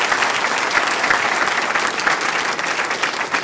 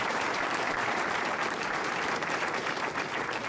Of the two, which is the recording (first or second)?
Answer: first